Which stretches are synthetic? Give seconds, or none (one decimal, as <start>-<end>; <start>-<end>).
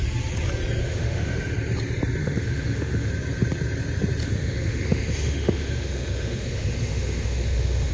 0.8-1.5; 2.2-3.1; 4.2-7.9